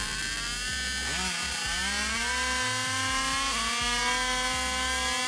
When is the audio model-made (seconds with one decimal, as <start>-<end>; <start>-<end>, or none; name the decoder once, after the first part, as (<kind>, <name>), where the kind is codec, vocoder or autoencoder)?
none